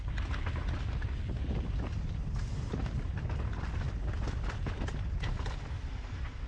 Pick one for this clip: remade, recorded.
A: recorded